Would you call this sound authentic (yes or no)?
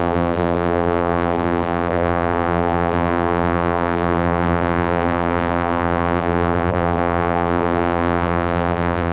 no